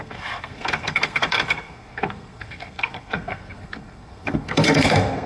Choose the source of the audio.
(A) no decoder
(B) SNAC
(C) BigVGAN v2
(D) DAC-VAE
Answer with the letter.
B